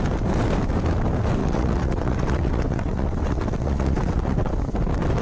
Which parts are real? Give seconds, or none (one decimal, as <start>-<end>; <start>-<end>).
0.0-1.4; 4.5-5.2

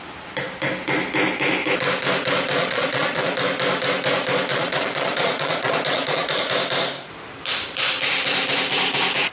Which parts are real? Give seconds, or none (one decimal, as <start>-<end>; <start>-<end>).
0.0-2.6; 3.3-4.5; 6.5-9.3

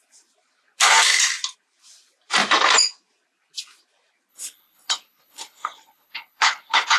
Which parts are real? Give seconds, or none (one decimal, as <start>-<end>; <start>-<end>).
0.0-4.3